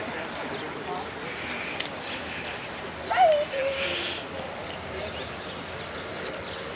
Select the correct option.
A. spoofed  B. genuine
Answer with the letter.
B